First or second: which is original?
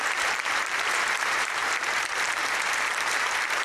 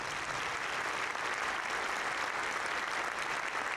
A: second